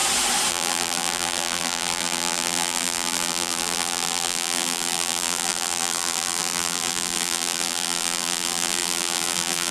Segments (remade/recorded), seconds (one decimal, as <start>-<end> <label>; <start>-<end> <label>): 0.0-0.5 recorded; 0.5-9.7 remade